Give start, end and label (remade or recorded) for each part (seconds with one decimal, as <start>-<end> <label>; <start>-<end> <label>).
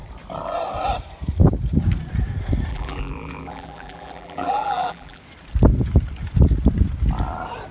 0.0-2.7 recorded; 2.7-5.2 remade; 5.2-7.7 recorded